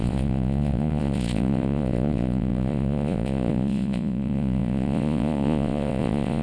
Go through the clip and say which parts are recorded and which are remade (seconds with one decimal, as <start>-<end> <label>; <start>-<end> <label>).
0.0-6.4 remade